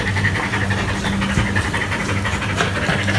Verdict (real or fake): real